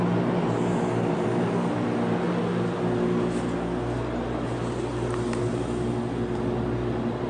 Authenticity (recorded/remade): recorded